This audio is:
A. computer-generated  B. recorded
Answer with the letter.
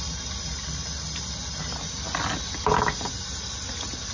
B